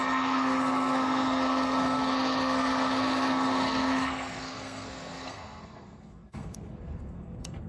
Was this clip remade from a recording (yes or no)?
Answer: yes